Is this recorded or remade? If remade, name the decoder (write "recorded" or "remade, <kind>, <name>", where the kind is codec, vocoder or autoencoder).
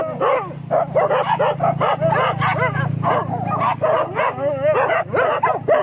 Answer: recorded